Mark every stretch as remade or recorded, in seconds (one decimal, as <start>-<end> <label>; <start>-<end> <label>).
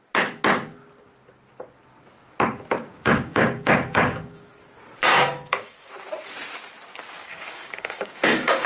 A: 0.0-2.8 recorded; 2.8-4.5 remade; 4.5-5.1 recorded; 5.1-5.9 remade; 5.9-7.2 recorded; 7.2-8.7 remade